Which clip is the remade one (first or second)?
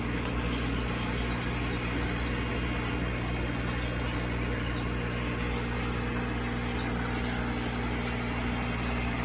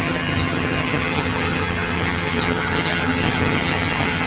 second